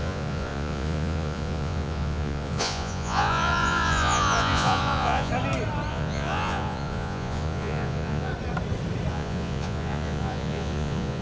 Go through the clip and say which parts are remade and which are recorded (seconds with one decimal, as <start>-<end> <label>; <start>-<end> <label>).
0.0-5.3 remade; 5.3-5.9 recorded; 5.9-8.3 remade; 8.3-9.1 recorded; 9.1-11.2 remade